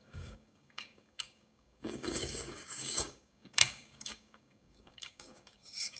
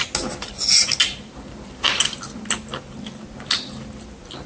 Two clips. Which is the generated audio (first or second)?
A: first